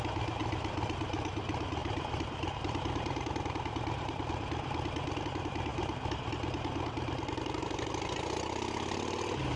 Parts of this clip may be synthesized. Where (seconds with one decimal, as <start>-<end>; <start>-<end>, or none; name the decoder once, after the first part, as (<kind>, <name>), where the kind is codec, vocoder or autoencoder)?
1.8-4.3 (vocoder, BigVGAN v2); 5.7-6.3